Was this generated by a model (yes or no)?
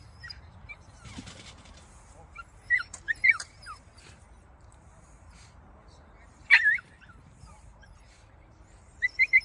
yes